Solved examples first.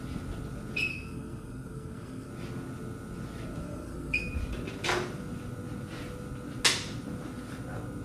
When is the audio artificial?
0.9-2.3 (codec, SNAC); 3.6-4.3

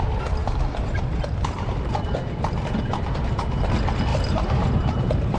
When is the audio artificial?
4.1-5.4 (vocoder, BigVGAN v2)

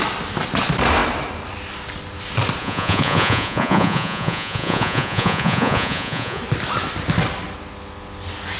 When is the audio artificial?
2.6-6.4 (vocoder, Vocos)

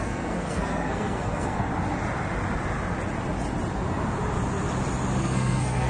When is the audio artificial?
0.0-1.7 (codec, SNAC); 5.2-5.9

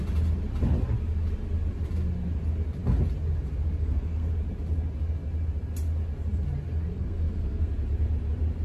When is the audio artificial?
3.8-4.3 (codec, SNAC); 6.9-7.7

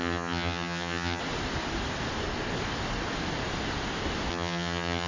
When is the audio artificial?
0.0-1.2 (vocoder, HiFi-GAN); 4.3-5.1

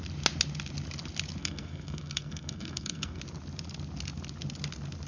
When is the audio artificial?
1.4-3.2 (codec, SNAC)